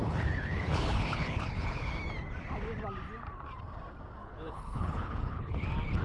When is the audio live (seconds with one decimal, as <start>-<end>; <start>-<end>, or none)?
1.9-4.2; 5.6-6.0